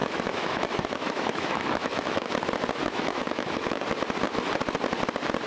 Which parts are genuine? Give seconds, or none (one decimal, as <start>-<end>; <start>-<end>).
2.3-2.8; 3.8-5.5